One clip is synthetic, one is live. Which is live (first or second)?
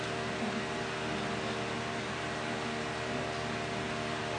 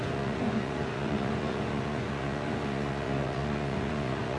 first